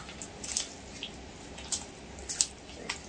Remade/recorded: recorded